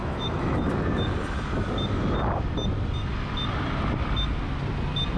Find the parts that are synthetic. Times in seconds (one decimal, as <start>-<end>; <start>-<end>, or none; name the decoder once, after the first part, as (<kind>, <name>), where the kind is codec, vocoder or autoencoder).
0.0-0.7 (autoencoder, DAC-VAE)